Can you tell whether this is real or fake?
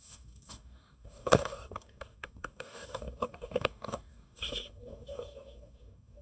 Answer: fake